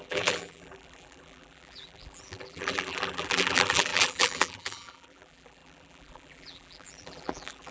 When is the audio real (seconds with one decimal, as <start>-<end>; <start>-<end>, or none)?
none